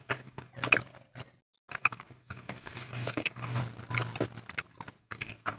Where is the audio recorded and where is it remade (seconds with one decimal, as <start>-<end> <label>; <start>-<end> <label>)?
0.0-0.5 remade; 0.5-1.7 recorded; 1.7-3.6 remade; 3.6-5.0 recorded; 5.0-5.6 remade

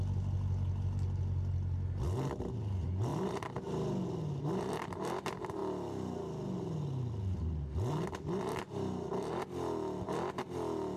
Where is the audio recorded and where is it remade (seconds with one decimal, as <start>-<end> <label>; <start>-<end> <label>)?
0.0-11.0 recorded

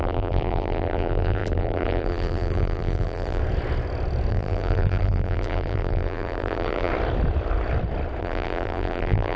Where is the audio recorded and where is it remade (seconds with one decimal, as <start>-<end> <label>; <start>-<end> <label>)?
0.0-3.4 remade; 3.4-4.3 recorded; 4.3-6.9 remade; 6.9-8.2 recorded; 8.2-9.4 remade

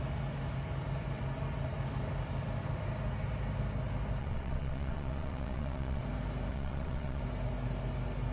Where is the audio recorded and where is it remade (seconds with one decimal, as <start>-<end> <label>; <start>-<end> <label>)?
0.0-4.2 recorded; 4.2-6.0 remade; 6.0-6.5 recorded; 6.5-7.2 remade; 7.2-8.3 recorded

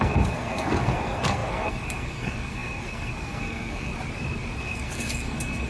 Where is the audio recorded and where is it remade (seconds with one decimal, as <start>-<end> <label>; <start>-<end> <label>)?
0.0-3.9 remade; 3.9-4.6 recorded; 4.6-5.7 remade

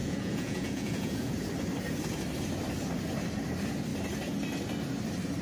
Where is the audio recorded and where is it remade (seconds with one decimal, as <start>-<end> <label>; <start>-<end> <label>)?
0.0-1.3 remade; 1.3-5.4 recorded

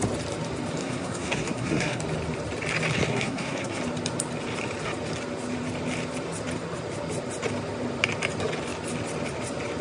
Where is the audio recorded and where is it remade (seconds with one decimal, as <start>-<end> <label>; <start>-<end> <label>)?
0.0-0.8 recorded; 0.8-2.0 remade; 2.0-3.1 recorded; 3.1-3.8 remade; 3.8-9.8 recorded